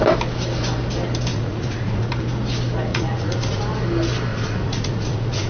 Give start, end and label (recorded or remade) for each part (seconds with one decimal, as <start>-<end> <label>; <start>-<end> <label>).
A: 0.0-1.3 recorded; 1.3-2.1 remade; 2.1-2.9 recorded; 2.9-3.6 remade; 3.6-4.3 recorded; 4.3-5.5 remade